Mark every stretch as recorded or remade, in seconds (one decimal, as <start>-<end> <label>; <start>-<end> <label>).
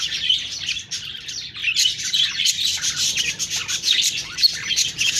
0.0-5.2 remade